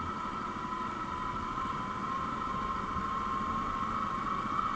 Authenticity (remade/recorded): recorded